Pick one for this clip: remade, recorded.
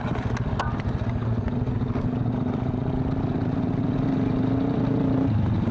recorded